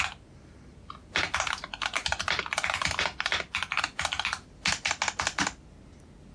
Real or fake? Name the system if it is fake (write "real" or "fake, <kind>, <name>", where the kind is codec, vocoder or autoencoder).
real